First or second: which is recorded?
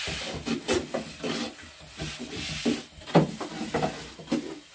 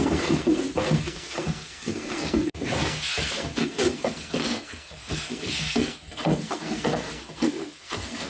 first